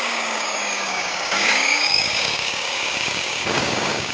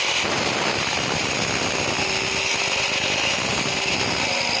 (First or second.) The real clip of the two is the second